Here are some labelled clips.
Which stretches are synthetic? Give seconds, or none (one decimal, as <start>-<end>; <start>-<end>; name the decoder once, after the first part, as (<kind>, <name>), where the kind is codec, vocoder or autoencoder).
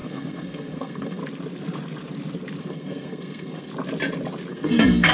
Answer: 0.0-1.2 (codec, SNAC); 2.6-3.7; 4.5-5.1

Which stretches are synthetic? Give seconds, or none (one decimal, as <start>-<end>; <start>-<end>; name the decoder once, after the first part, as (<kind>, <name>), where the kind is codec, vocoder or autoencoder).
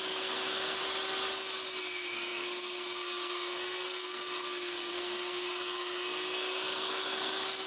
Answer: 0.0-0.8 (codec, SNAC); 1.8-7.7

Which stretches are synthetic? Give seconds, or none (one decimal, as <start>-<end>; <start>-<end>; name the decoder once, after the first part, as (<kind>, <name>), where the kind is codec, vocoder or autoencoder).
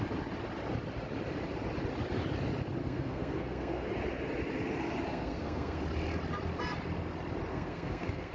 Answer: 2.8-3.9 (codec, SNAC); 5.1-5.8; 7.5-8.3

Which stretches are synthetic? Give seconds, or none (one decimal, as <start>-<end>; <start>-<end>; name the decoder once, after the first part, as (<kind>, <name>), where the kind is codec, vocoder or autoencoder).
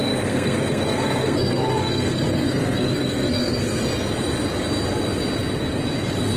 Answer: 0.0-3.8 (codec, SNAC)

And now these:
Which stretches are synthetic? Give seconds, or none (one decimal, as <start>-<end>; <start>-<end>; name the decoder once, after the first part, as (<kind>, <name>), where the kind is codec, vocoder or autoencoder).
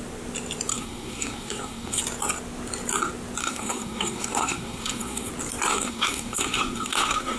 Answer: 0.7-2.0 (codec, SNAC); 3.4-5.3; 5.7-7.4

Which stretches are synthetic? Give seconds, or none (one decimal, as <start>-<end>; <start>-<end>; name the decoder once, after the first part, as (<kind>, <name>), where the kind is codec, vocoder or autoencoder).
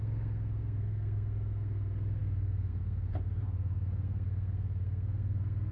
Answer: 0.0-5.7 (codec, SNAC)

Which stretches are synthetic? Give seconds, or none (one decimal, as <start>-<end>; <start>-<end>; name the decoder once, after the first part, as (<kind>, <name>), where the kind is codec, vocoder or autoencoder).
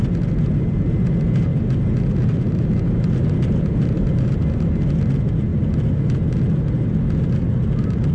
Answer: none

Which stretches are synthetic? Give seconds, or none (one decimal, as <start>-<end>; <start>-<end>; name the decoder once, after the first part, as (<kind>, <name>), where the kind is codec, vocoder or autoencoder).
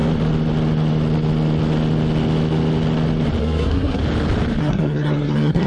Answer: 3.4-4.0 (codec, SNAC); 4.6-5.7